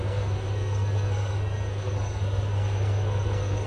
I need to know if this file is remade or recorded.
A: remade